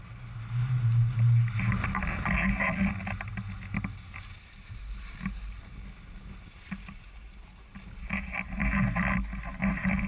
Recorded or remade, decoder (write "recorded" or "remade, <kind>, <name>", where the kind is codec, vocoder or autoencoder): recorded